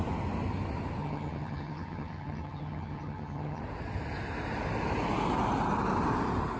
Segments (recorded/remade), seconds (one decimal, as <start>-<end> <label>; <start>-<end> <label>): 0.0-1.0 recorded; 1.0-3.6 remade; 3.6-6.6 recorded

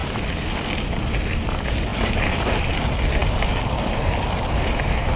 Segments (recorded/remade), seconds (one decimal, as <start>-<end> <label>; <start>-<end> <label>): 0.0-5.2 recorded

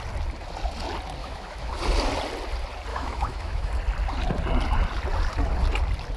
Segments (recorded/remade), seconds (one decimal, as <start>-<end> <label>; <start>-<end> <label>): 0.0-1.2 recorded; 1.2-1.7 remade; 1.7-2.9 recorded; 2.9-3.7 remade; 3.7-6.2 recorded